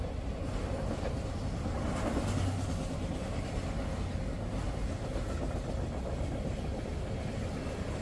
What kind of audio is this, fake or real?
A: real